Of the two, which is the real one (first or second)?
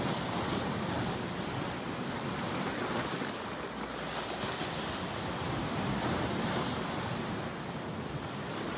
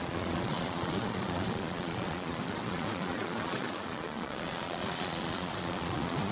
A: first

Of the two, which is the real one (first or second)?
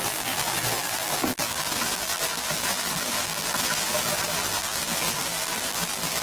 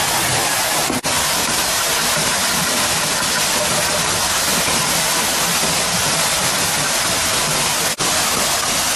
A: second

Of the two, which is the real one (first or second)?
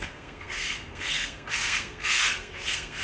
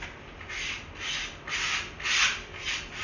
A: second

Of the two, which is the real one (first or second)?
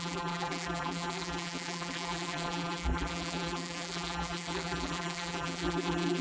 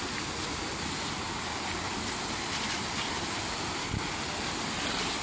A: second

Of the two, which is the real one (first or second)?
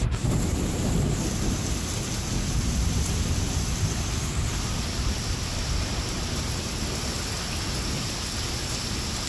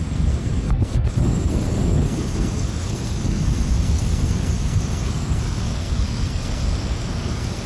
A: first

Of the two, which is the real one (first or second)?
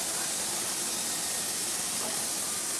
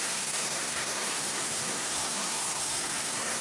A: first